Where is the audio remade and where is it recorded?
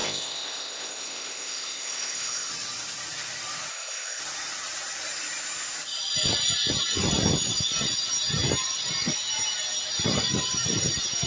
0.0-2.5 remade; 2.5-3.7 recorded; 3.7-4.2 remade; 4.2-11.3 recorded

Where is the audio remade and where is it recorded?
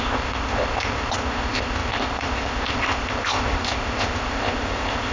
0.0-5.1 remade